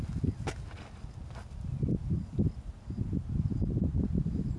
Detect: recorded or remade recorded